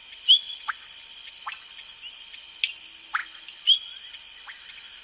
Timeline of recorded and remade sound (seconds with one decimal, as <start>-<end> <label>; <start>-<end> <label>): 0.0-5.0 recorded